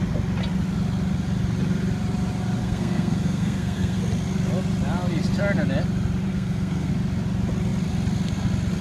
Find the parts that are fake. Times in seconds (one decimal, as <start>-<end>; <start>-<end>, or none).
2.6-4.0; 6.3-6.9